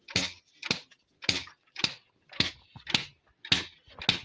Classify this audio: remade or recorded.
recorded